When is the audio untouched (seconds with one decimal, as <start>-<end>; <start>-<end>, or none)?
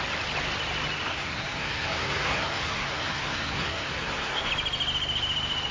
0.0-1.1; 4.5-5.7